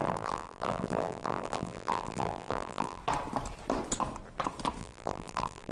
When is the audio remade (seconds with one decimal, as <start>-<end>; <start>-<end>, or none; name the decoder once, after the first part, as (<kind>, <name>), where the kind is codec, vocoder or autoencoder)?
0.0-3.0 (vocoder, BigVGAN v2); 4.8-5.7